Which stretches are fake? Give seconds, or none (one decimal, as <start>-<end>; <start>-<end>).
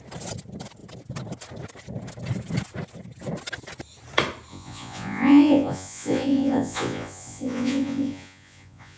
4.5-9.0